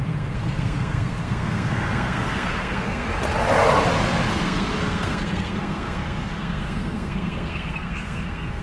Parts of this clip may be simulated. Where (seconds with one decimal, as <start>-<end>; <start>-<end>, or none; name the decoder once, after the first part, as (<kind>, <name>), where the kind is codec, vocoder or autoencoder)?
0.0-3.1 (codec, SNAC); 4.3-8.6